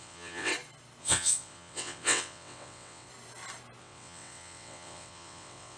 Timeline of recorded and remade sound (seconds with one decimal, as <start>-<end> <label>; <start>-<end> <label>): 0.0-0.5 remade; 0.5-1.0 recorded; 1.0-3.1 remade; 3.1-3.8 recorded; 3.8-5.8 remade